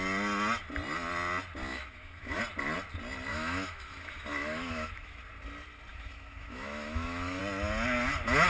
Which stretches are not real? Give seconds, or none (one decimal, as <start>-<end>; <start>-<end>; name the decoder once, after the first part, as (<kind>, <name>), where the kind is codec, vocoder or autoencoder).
1.7-2.4 (autoencoder, DAC-VAE); 3.3-5.2; 5.9-7.4

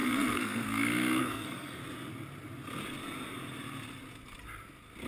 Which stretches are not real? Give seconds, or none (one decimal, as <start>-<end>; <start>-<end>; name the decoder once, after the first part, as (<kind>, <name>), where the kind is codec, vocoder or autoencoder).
0.0-1.8 (codec, SNAC)

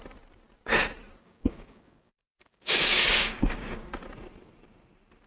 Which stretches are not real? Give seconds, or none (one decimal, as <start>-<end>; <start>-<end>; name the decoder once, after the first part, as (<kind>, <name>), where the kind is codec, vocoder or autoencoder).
1.2-3.9 (codec, DAC)

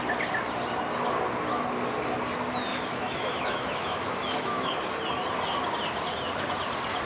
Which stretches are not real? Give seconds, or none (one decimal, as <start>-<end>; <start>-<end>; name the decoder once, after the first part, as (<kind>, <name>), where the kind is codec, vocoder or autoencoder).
2.7-4.8 (autoencoder, DAC-VAE)

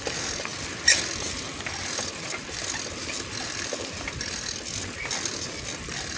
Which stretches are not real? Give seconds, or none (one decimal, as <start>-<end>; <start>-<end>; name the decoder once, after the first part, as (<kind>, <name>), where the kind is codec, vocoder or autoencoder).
none